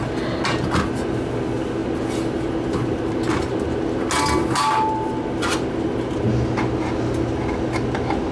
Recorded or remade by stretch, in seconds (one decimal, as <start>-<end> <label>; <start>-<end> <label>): 0.0-8.3 recorded

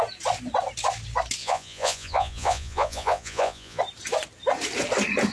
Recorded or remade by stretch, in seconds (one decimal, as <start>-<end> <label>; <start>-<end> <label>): 0.0-1.4 recorded; 1.4-3.8 remade; 3.8-5.3 recorded

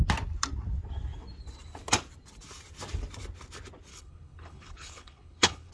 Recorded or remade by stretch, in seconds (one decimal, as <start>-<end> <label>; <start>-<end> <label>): 0.0-3.9 recorded; 3.9-5.7 remade